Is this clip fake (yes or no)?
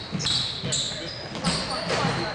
no